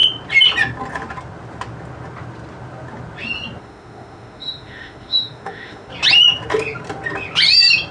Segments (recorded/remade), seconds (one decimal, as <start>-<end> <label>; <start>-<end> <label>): 0.0-3.6 recorded; 3.6-5.9 remade; 5.9-7.9 recorded